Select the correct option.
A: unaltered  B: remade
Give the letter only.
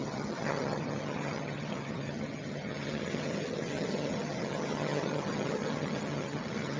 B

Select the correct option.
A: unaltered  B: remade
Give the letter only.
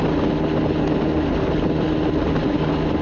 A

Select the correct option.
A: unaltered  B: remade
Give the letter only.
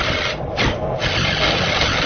A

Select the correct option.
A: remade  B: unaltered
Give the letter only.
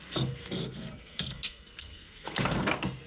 A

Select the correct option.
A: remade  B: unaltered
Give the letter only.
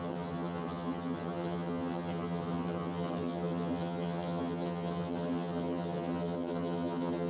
A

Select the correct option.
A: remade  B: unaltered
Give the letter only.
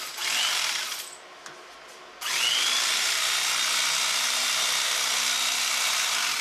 B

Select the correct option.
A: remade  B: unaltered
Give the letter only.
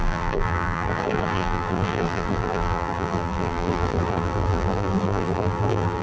A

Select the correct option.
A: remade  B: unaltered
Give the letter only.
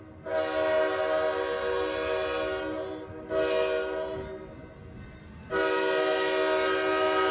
B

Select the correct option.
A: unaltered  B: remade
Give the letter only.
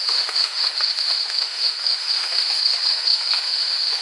B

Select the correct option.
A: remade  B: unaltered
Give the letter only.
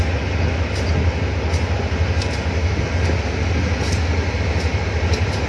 B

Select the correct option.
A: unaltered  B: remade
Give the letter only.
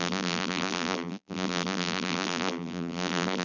B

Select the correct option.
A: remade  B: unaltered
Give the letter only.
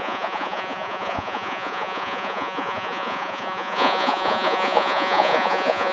A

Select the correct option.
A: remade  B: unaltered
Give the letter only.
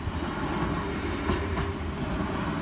B